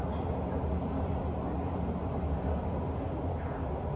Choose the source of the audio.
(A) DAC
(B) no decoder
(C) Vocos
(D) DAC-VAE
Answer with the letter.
B